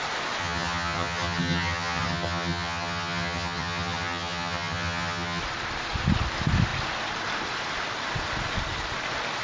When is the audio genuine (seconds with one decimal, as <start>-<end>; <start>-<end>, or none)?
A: 0.0-0.4; 5.4-9.4

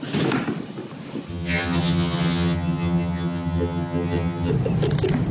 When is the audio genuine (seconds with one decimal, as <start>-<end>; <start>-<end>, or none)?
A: 0.0-1.3; 4.5-5.3

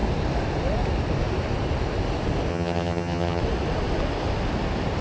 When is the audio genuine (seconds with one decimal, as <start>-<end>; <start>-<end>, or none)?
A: 0.0-2.5; 3.4-5.0

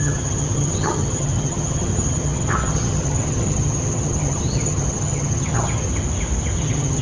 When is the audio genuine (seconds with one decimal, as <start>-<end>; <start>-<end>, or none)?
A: 5.9-6.6

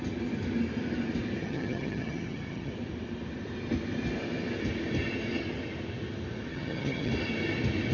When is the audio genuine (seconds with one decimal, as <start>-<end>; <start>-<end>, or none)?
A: 0.0-1.4; 2.7-6.5; 7.1-7.9

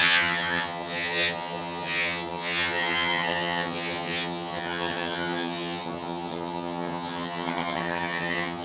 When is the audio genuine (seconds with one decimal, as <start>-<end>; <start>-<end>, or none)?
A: none

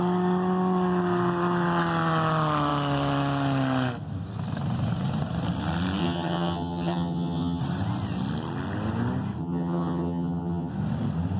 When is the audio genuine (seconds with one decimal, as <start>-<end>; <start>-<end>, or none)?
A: 0.0-6.0; 7.6-9.4; 10.7-11.4

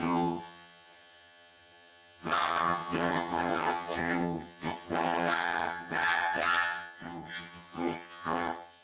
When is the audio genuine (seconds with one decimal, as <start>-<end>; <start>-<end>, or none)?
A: none